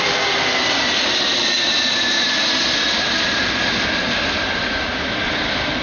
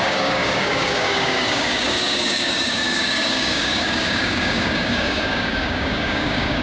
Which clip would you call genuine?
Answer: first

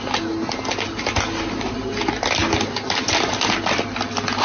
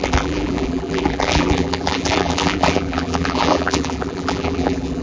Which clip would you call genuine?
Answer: first